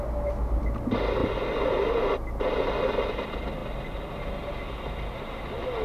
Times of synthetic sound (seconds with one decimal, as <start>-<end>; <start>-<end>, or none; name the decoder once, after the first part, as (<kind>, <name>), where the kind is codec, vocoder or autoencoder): none